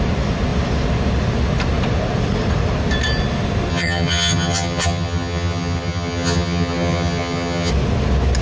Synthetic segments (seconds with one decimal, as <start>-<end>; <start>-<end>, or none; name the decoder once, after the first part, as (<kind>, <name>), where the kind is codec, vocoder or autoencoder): 3.7-7.7 (vocoder, HiFi-GAN)